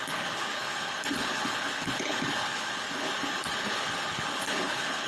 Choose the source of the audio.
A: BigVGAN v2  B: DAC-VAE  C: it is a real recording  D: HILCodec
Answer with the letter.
D